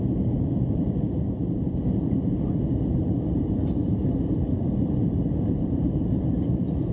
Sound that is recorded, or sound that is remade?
remade